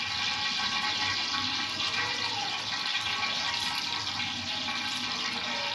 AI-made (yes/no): no